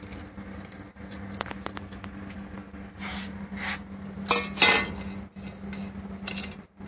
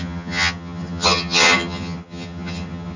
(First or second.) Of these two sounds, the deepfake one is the second